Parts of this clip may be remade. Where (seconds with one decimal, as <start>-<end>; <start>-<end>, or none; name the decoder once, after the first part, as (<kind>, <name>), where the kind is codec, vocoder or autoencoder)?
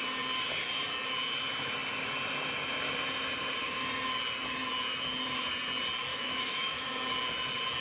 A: 6.1-6.9 (autoencoder, DAC-VAE)